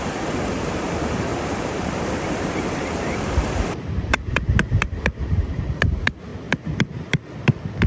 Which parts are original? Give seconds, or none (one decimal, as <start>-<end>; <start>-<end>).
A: 6.3-7.9